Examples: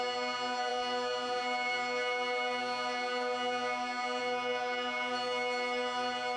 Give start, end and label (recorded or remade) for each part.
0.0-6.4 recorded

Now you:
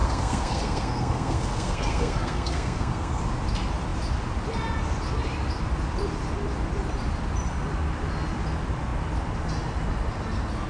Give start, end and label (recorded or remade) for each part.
0.0-3.2 remade; 3.2-10.7 recorded

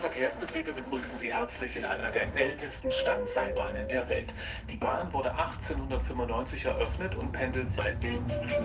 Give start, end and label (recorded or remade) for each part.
0.0-5.0 remade; 5.0-7.7 recorded; 7.7-8.6 remade

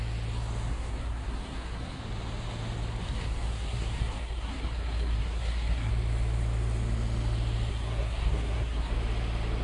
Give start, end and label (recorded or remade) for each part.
0.0-0.7 recorded; 0.7-2.0 remade; 2.0-3.0 recorded; 3.0-5.9 remade; 5.9-7.7 recorded; 7.7-8.9 remade; 8.9-9.6 recorded

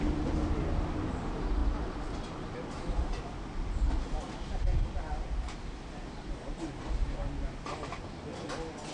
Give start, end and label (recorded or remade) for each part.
0.0-8.9 recorded

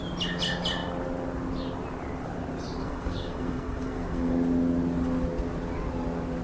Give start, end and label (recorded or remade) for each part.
0.0-2.8 recorded; 2.8-4.3 remade; 4.3-6.4 recorded

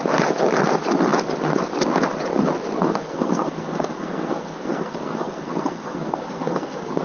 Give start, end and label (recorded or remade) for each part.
0.0-2.8 recorded; 2.8-7.0 remade

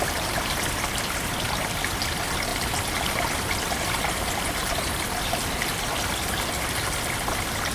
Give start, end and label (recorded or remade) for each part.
0.0-7.7 recorded